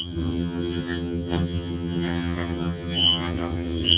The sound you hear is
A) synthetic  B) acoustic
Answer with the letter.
A